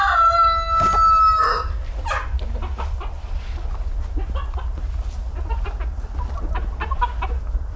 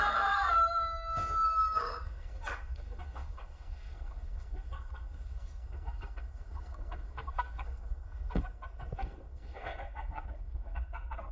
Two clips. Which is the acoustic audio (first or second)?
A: first